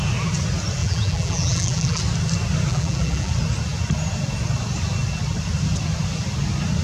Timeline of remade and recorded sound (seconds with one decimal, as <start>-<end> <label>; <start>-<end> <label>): 0.0-0.8 recorded; 0.8-2.0 remade; 2.0-2.7 recorded; 2.7-3.3 remade; 3.3-6.8 recorded